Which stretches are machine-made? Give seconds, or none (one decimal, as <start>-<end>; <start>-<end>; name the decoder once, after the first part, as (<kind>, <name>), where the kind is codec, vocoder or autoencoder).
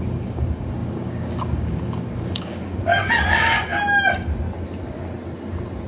0.0-3.7 (codec, DAC)